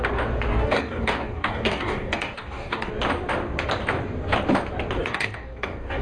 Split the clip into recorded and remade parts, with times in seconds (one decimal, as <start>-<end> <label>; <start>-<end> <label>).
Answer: 0.0-0.5 recorded; 0.5-2.9 remade; 2.9-5.0 recorded; 5.0-6.0 remade